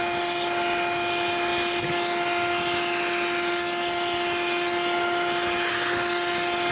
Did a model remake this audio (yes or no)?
no